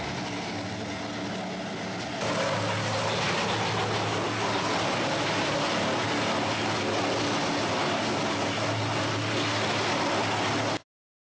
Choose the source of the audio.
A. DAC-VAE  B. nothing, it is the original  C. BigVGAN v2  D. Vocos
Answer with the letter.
B